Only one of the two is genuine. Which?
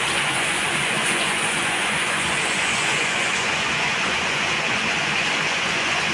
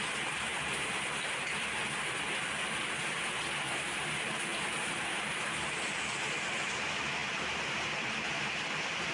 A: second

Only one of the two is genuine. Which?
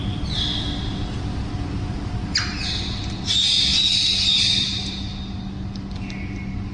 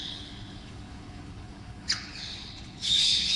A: first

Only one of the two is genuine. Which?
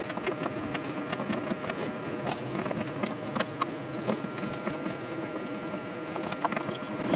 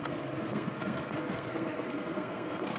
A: first